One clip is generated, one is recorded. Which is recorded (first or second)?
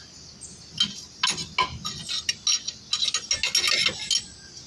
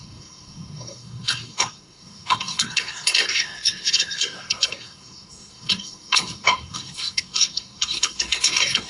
first